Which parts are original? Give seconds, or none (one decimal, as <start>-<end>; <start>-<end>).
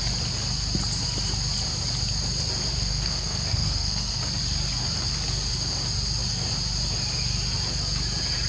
0.0-2.7; 4.2-8.5